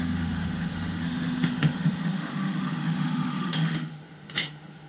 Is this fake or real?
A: fake